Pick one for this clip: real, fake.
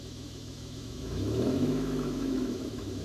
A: fake